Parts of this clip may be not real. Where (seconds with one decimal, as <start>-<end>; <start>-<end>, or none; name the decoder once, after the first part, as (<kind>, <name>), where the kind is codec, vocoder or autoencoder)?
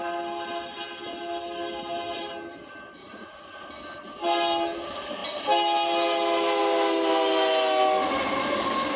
3.0-3.7 (vocoder, Vocos)